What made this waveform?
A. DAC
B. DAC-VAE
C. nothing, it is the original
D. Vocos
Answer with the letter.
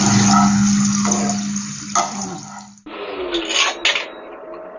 C